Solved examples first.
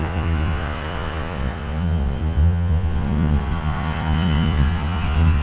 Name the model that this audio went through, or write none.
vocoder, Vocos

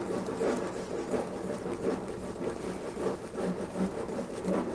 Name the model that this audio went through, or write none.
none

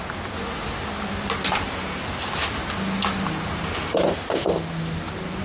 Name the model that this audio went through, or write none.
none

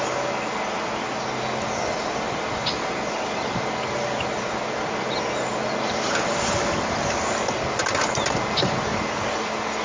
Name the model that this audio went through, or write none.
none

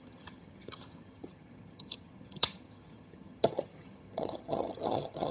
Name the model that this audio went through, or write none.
vocoder, HiFi-GAN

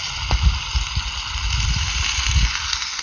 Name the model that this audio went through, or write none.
none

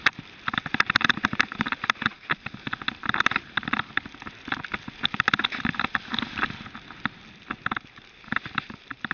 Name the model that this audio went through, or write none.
none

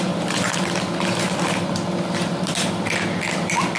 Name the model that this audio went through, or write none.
none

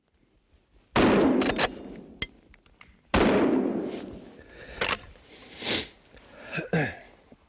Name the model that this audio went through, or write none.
none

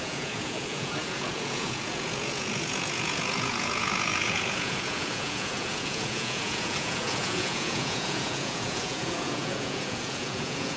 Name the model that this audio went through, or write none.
vocoder, Vocos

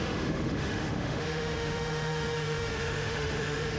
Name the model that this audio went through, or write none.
autoencoder, DAC-VAE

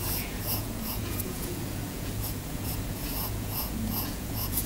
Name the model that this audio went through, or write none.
vocoder, Vocos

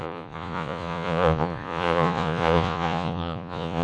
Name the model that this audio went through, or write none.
vocoder, Vocos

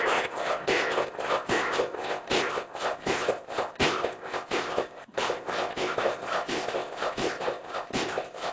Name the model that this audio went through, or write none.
codec, ZipCodec